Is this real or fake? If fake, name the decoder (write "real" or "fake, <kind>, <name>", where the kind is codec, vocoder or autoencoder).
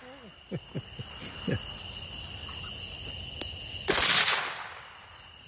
real